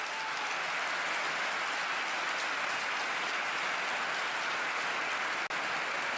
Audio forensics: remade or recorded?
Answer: recorded